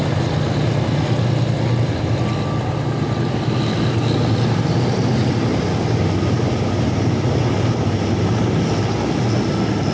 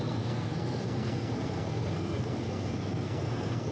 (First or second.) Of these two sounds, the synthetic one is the second